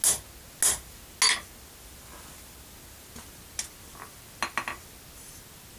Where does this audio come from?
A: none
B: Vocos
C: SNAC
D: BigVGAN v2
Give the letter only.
A